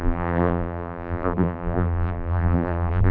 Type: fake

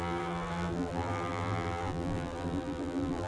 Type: fake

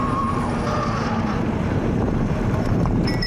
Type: fake